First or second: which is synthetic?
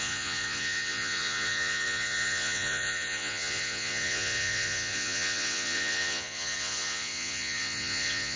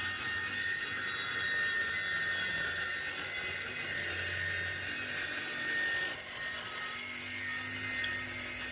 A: first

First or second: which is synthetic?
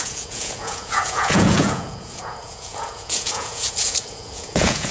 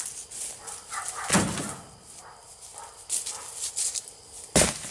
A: first